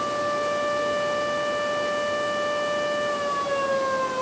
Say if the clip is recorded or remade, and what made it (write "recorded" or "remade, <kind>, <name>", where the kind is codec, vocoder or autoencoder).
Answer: recorded